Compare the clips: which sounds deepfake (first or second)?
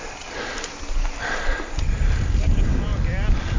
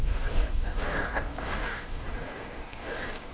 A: second